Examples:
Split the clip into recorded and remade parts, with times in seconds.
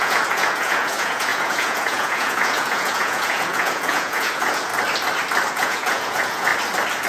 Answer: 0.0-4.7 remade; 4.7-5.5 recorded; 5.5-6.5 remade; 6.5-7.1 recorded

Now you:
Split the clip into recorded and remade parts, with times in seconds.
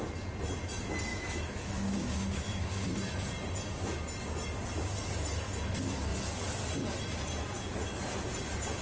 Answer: 0.0-1.1 recorded; 1.1-2.9 remade; 2.9-8.8 recorded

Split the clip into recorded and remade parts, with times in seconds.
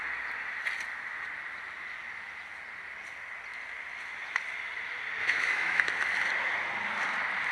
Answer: 0.0-5.2 recorded; 5.2-5.8 remade; 5.8-7.5 recorded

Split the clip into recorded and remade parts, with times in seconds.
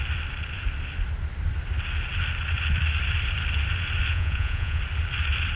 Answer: 0.0-4.1 recorded; 4.1-4.8 remade; 4.8-5.6 recorded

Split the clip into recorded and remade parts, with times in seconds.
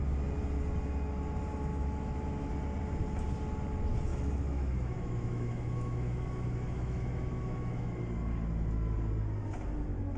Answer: 0.0-1.7 recorded; 1.7-2.5 remade; 2.5-4.1 recorded; 4.1-8.0 remade; 8.0-10.2 recorded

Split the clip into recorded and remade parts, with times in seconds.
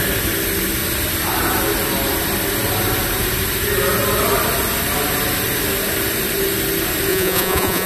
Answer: 0.0-7.1 recorded; 7.1-7.9 remade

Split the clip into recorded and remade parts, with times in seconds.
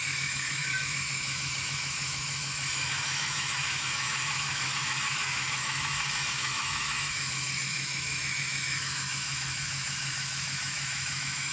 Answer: 0.0-11.5 remade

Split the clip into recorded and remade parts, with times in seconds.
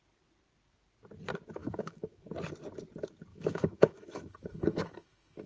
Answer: 0.0-1.6 recorded; 1.6-2.3 remade; 2.3-3.3 recorded; 3.3-5.5 remade